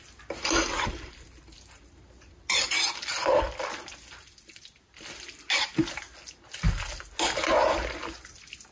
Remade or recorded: recorded